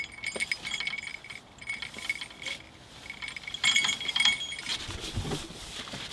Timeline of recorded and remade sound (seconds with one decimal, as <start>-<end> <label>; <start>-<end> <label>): 0.0-6.1 recorded